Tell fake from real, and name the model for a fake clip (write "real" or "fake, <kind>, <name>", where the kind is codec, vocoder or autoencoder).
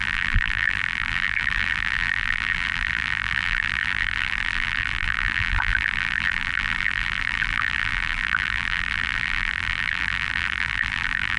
fake, vocoder, BigVGAN v2